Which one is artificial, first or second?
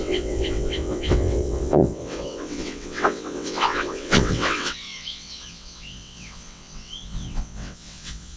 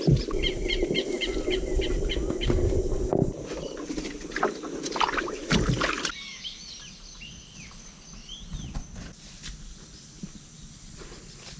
first